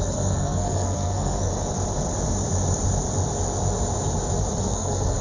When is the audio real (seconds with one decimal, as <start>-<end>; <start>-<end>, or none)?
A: 1.5-4.6